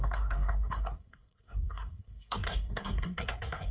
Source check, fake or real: fake